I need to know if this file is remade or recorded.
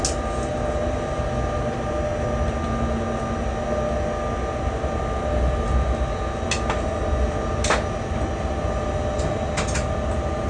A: recorded